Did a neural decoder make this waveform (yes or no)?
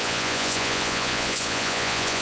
yes